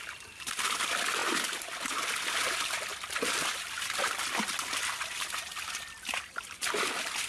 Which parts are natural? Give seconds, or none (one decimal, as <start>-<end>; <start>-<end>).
0.0-7.3